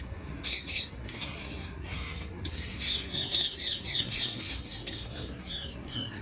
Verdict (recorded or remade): remade